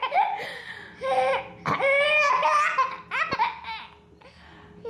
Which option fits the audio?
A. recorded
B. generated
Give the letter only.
A